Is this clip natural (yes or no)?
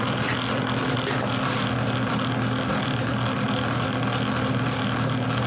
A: yes